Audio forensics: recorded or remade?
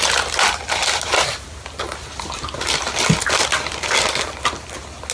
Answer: recorded